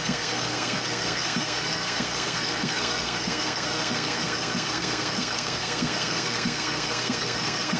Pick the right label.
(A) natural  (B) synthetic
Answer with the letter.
B